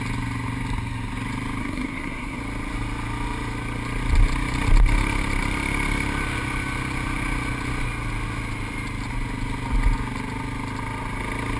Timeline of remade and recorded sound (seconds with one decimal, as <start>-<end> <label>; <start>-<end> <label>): 0.0-1.6 recorded; 1.6-2.4 remade; 2.4-11.6 recorded